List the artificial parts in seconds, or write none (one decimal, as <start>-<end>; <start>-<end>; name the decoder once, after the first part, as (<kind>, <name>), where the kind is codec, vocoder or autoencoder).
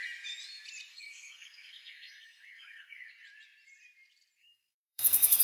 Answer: 0.9-3.1 (codec, SNAC); 4.4-5.4